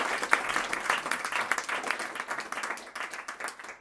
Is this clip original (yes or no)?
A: yes